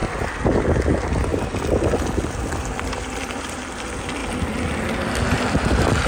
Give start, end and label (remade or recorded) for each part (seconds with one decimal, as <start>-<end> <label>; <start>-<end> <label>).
0.0-1.3 recorded; 1.3-3.6 remade; 3.6-6.1 recorded